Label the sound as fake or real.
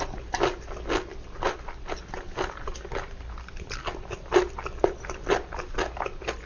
real